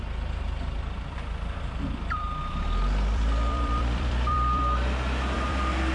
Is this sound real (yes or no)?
no